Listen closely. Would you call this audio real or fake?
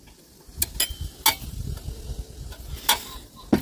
real